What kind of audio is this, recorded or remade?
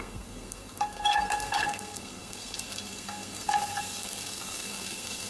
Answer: remade